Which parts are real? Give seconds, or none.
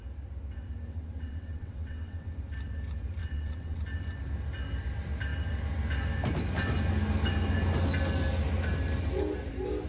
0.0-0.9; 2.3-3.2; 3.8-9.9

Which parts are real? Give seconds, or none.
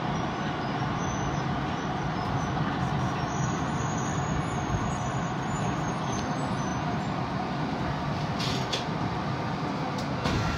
0.0-10.6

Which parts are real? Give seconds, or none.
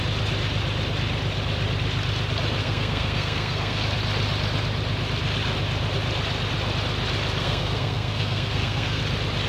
0.0-2.6; 3.8-7.4; 9.0-9.5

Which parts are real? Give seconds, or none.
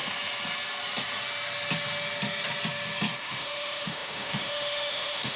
0.0-3.2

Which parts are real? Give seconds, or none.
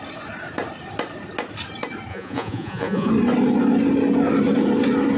0.0-2.1; 3.1-5.2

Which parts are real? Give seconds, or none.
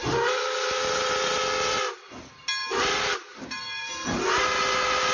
0.0-2.6; 4.6-5.1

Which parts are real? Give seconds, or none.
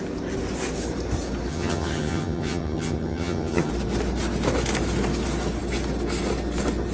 0.0-1.5; 3.7-6.9